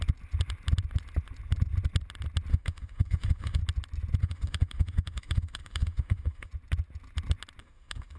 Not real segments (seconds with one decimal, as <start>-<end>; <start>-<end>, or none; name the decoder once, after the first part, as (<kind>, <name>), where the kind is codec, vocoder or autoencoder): 2.5-3.6 (autoencoder, DAC-VAE); 4.2-6.5; 7.6-8.2